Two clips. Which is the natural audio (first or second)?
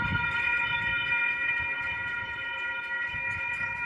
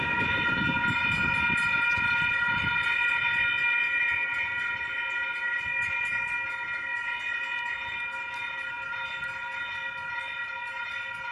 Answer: second